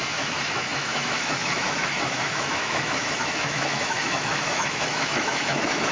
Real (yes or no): no